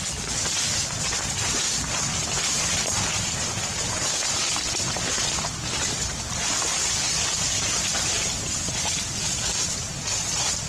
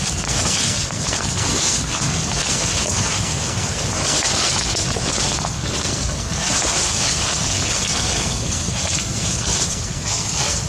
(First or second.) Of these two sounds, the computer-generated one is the second